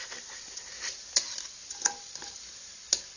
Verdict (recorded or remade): recorded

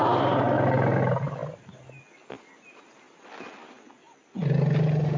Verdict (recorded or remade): recorded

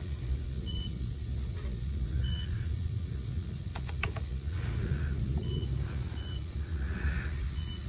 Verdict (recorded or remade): remade